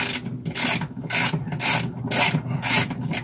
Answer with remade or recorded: recorded